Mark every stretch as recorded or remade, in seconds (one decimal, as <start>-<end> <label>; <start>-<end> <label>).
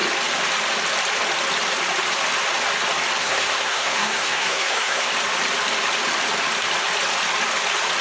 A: 0.0-3.2 recorded; 3.2-5.1 remade; 5.1-8.0 recorded